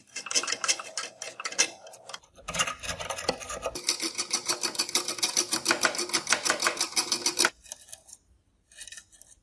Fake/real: real